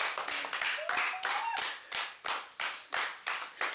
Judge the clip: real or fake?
real